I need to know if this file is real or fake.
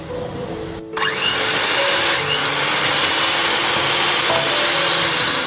fake